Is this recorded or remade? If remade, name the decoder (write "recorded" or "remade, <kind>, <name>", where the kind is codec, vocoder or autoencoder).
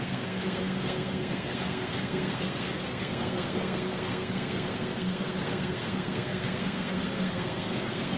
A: remade, codec, SNAC